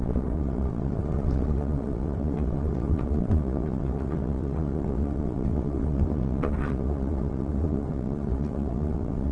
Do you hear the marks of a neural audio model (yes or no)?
yes